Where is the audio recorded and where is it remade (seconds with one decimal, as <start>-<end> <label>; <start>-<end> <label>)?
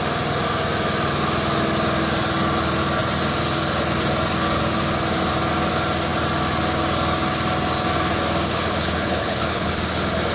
0.0-8.5 recorded; 8.5-9.7 remade; 9.7-10.3 recorded